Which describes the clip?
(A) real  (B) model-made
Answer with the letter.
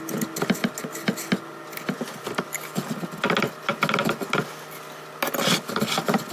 A